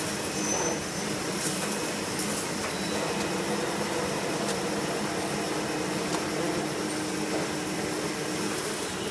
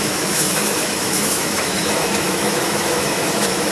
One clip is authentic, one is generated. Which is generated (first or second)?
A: second